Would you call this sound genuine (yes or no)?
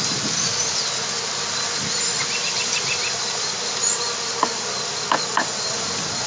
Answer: yes